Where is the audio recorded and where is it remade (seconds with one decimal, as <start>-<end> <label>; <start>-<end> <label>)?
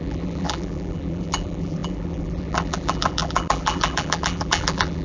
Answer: 0.0-5.0 remade